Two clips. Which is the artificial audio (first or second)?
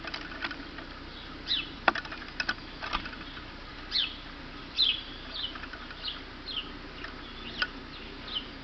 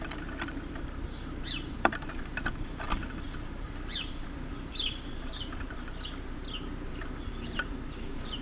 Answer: second